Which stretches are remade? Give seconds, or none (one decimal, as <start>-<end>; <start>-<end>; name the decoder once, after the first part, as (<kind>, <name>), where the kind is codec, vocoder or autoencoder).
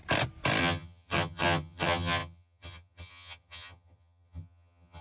0.6-5.0 (vocoder, HiFi-GAN)